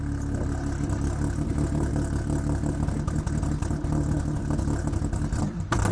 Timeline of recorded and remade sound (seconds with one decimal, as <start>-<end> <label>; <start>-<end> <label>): 0.0-5.9 recorded